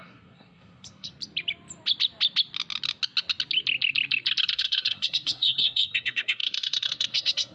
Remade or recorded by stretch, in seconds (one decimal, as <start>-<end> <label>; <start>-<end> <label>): 0.0-1.1 remade; 1.1-4.5 recorded; 4.5-7.5 remade